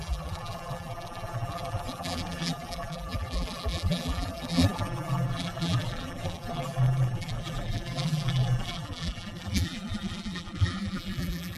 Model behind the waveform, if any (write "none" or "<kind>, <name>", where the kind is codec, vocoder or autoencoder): vocoder, BigVGAN v2